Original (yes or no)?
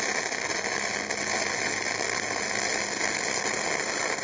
yes